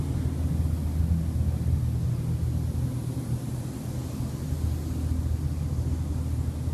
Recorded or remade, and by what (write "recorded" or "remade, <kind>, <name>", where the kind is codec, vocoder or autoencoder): recorded